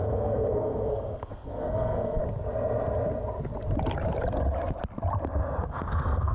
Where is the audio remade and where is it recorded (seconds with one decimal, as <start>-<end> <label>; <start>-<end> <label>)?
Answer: 0.0-2.2 remade; 2.2-5.7 recorded; 5.7-6.3 remade